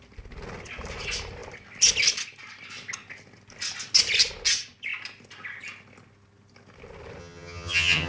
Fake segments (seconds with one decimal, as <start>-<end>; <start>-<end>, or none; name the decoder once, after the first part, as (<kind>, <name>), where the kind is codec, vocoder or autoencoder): 7.2-8.1 (vocoder, HiFi-GAN)